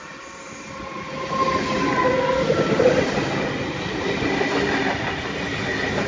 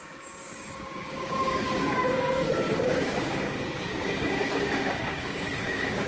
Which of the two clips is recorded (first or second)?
first